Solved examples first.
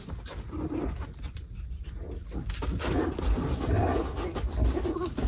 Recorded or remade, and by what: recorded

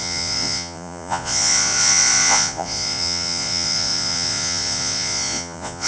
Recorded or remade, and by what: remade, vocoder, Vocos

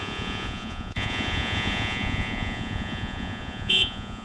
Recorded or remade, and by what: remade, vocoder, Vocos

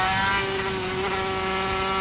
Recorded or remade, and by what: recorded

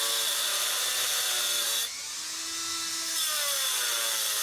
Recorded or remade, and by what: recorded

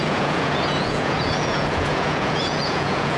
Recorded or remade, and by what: remade, vocoder, Vocos